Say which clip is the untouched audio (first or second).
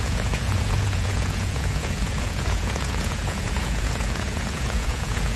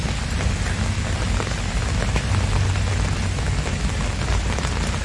second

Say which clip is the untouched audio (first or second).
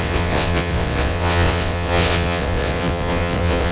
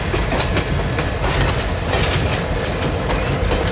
second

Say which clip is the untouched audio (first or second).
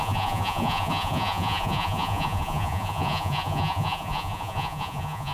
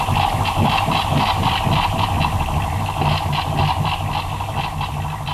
second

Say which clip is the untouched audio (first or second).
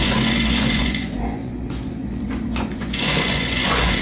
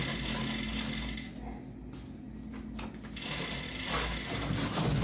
second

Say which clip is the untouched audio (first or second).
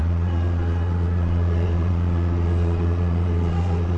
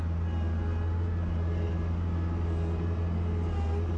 second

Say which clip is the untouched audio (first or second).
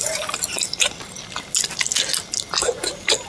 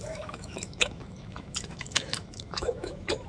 first